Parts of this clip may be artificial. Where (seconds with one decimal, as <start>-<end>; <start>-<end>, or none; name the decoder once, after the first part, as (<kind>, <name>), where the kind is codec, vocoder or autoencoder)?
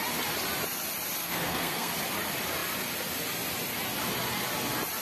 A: 1.2-1.9 (codec, SNAC)